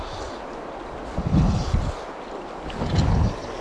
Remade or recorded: recorded